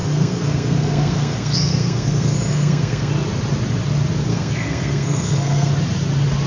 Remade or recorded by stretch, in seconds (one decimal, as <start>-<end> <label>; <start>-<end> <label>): 0.0-3.1 remade; 3.1-4.3 recorded; 4.3-5.7 remade; 5.7-6.5 recorded

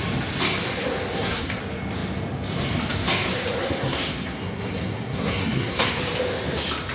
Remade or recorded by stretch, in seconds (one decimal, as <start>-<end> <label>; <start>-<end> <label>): 0.0-1.1 recorded; 1.1-1.6 remade; 1.6-3.6 recorded; 3.6-6.0 remade; 6.0-6.9 recorded